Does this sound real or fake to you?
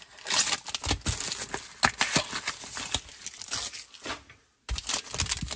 real